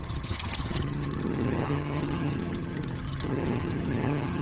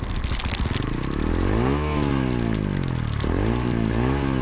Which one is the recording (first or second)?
second